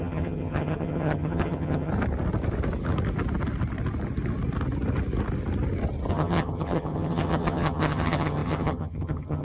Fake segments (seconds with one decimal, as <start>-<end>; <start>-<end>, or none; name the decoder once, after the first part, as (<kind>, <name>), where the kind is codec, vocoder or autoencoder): 0.0-1.9 (vocoder, HiFi-GAN); 6.1-9.4